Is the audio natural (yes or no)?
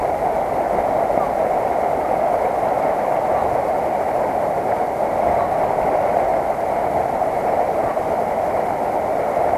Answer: yes